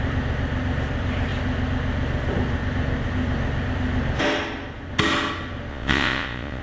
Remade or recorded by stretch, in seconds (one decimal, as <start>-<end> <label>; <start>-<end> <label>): 0.0-5.7 recorded; 5.7-6.6 remade